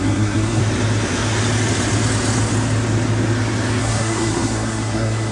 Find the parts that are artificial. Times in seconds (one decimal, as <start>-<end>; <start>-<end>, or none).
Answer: 0.0-0.6; 3.8-5.3